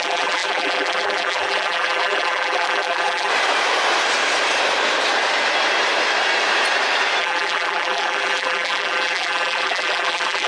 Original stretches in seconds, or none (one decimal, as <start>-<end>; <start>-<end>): 3.3-7.2